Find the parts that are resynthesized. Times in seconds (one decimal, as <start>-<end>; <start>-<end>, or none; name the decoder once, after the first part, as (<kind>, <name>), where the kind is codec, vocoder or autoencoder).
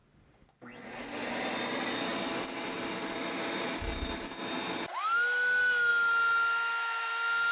2.1-4.7 (vocoder, BigVGAN v2)